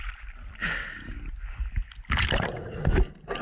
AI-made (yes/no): no